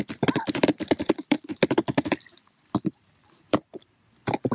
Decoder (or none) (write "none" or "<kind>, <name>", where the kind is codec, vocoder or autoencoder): none